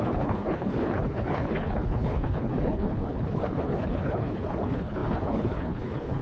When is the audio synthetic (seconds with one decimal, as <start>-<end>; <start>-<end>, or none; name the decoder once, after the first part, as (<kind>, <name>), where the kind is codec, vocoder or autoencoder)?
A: 0.0-6.2 (codec, HILCodec)